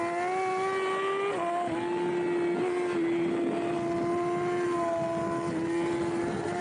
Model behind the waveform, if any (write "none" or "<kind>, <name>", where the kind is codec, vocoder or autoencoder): none